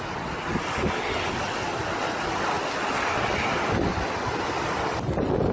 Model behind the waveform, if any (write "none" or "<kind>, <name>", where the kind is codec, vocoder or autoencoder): none